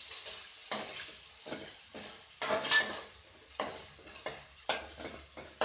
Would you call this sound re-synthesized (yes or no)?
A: no